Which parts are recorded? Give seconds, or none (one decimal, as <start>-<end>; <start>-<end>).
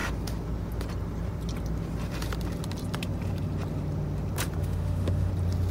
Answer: 0.0-4.6; 5.3-5.7